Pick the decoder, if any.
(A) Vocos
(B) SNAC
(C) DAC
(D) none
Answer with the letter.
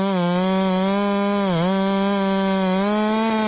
D